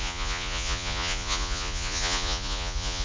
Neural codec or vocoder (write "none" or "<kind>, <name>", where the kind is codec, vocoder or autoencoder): vocoder, Vocos